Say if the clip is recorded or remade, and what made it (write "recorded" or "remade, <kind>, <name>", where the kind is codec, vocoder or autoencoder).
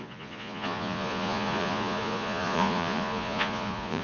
remade, vocoder, Vocos